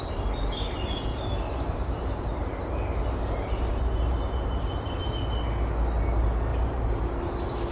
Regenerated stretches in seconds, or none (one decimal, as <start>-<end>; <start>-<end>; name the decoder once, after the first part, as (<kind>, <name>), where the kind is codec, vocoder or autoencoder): 1.1-5.1 (vocoder, BigVGAN v2); 6.5-7.1